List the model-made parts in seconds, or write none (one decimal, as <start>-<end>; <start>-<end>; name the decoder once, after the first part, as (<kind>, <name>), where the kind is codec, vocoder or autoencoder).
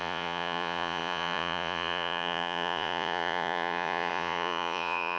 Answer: 0.0-5.2 (vocoder, Vocos)